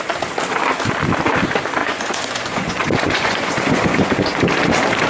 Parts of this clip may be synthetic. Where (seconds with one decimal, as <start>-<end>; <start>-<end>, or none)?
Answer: 1.8-4.4